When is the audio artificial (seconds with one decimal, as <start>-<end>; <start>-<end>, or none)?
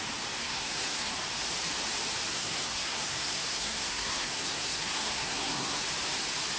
0.4-1.1; 2.3-5.8